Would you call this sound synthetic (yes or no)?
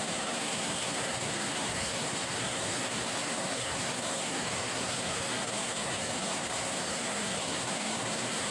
yes